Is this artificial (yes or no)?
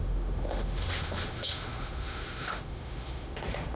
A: yes